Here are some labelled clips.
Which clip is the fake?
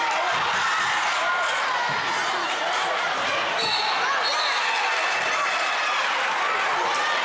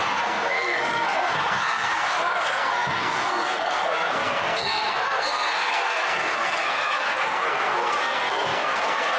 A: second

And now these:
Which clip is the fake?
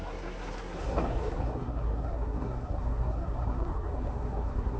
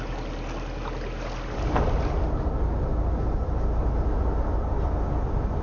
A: first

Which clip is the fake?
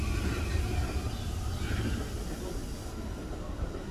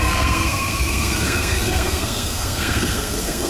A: second